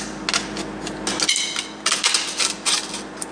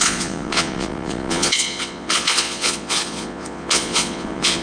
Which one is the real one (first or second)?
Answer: first